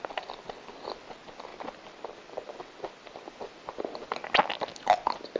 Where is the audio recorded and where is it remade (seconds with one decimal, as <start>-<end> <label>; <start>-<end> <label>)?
0.0-5.4 recorded